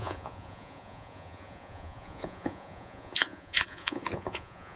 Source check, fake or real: fake